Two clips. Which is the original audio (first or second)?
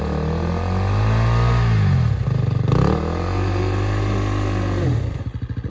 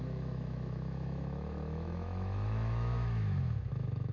first